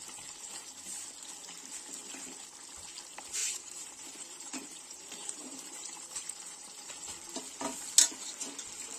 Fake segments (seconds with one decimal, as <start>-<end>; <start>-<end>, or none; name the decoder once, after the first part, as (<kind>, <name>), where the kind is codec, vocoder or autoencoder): 3.4-6.9 (vocoder, BigVGAN v2)